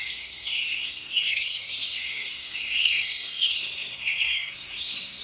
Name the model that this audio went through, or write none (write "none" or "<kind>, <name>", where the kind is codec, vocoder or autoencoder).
codec, SNAC